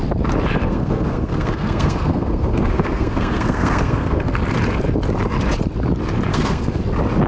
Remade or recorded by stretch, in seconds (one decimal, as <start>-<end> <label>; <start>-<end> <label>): 0.0-0.6 recorded; 0.6-4.4 remade; 4.4-6.3 recorded; 6.3-6.8 remade; 6.8-7.3 recorded